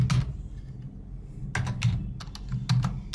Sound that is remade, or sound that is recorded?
recorded